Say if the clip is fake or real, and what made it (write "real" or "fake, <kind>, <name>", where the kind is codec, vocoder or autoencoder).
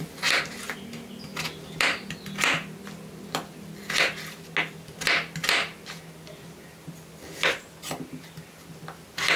real